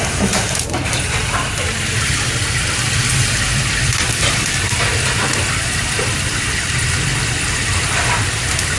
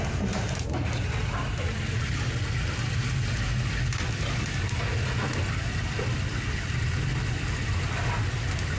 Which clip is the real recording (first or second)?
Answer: second